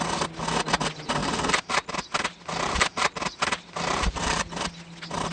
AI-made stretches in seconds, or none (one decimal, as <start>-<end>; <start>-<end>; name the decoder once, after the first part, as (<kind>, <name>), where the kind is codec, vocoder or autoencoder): 1.2-4.4 (vocoder, BigVGAN v2)